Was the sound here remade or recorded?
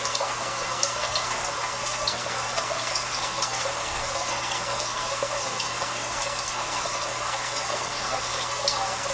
remade